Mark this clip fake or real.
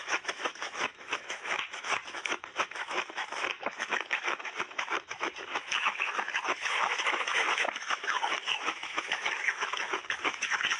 fake